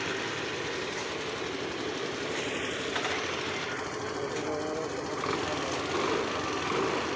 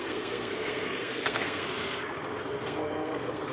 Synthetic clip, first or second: second